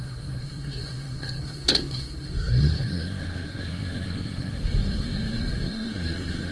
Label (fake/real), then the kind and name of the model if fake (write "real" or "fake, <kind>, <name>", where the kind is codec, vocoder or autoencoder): fake, codec, SNAC